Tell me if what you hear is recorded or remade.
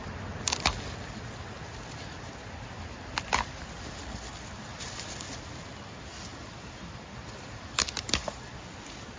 recorded